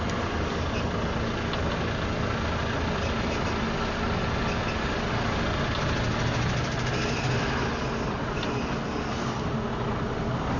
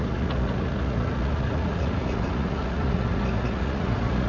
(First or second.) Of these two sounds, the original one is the first